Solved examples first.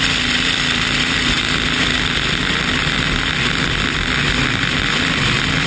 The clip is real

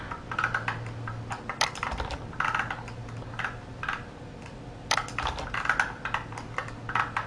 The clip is real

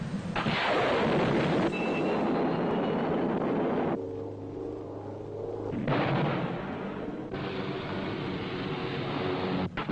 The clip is real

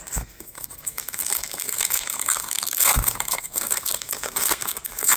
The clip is fake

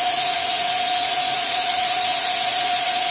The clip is fake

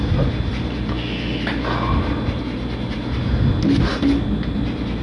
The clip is real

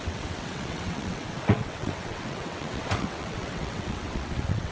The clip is fake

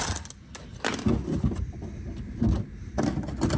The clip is real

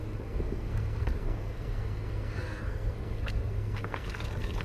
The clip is fake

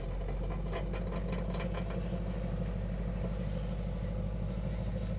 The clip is real